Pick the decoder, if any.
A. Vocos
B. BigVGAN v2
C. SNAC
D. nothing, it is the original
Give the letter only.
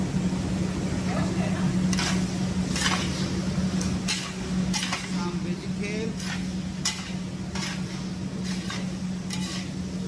D